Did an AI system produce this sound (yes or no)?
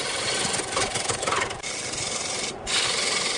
no